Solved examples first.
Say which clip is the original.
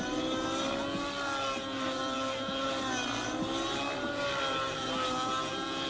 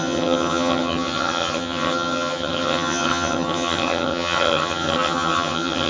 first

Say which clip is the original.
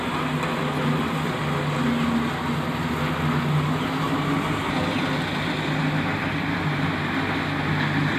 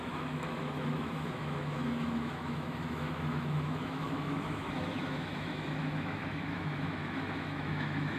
first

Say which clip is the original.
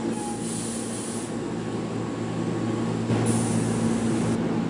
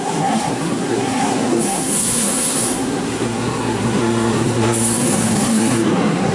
first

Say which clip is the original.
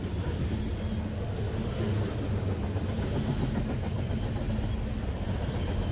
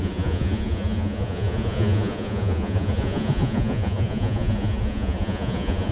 first